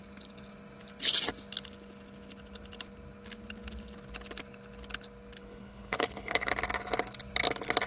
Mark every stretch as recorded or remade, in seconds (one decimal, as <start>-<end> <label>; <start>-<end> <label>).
0.0-5.4 recorded; 5.4-6.5 remade; 6.5-7.9 recorded